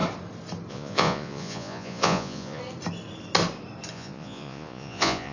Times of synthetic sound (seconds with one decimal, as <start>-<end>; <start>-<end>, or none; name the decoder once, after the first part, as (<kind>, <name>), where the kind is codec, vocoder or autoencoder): 0.7-2.6 (vocoder, Vocos); 3.9-5.3